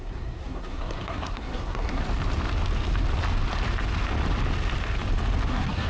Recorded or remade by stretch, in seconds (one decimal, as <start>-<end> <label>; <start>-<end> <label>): 0.0-2.0 remade; 2.0-5.5 recorded; 5.5-5.9 remade